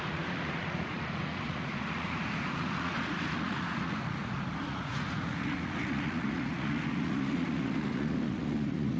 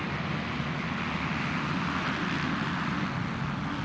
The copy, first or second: first